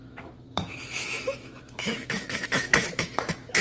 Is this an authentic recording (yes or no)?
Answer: no